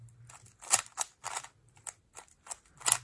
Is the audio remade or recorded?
recorded